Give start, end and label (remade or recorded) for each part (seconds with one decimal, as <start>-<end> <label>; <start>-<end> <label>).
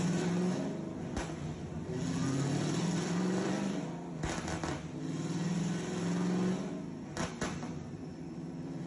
0.0-2.2 recorded; 2.2-5.6 remade; 5.6-8.1 recorded; 8.1-8.9 remade